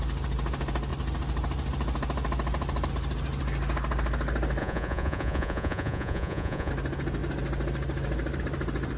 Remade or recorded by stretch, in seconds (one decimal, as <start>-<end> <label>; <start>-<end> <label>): 0.0-4.6 recorded; 4.6-6.7 remade; 6.7-9.0 recorded